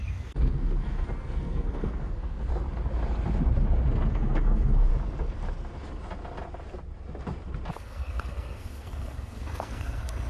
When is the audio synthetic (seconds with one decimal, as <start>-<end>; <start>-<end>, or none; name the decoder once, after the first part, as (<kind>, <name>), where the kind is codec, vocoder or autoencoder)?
0.0-2.5 (codec, SNAC); 4.1-4.9; 7.7-10.3